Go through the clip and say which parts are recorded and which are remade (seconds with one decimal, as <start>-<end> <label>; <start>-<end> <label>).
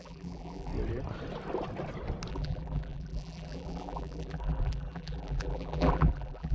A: 0.0-0.7 remade; 0.7-2.3 recorded; 2.3-6.5 remade